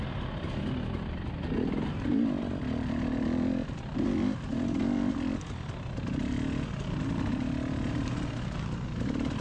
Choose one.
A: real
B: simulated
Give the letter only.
A